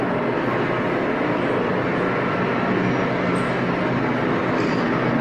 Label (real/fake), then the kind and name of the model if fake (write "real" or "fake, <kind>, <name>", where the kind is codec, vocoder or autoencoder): real